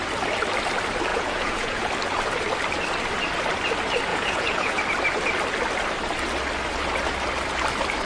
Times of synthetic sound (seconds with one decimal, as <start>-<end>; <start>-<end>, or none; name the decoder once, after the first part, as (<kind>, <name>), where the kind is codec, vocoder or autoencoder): 1.1-1.9 (vocoder, Vocos); 4.1-4.8